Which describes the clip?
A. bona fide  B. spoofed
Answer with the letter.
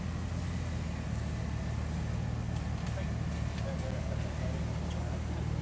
A